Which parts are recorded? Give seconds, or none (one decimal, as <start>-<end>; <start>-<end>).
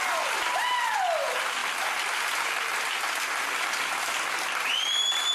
0.0-5.3